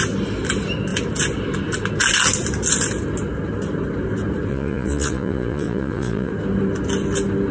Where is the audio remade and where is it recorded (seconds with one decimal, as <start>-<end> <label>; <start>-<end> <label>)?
0.0-4.5 recorded; 4.5-6.3 remade; 6.3-7.5 recorded